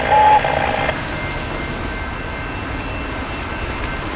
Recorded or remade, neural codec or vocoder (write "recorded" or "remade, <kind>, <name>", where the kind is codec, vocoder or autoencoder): recorded